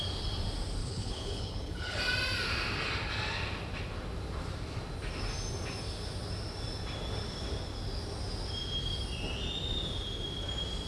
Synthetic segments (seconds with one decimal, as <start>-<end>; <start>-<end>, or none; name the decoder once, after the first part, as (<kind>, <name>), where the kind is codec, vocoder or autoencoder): 0.8-2.0 (codec, HILCodec)